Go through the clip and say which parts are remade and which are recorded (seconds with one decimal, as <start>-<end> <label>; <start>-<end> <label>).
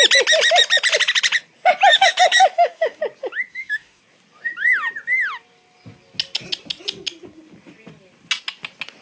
0.0-1.9 recorded; 1.9-3.0 remade; 3.0-3.5 recorded; 3.5-4.0 remade; 4.0-9.0 recorded